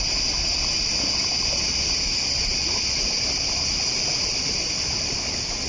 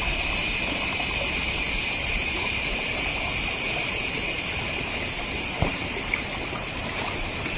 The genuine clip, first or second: first